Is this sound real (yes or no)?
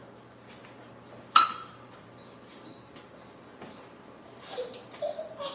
yes